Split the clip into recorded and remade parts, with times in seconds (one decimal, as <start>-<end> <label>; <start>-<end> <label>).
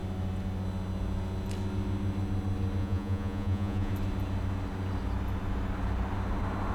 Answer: 0.0-2.8 recorded; 2.8-3.9 remade; 3.9-6.7 recorded